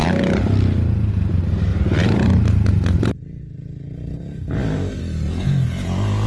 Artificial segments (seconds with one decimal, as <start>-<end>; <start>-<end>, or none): none